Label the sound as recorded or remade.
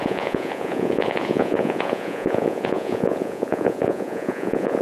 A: remade